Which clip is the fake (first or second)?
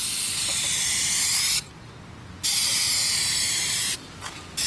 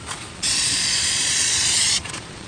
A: second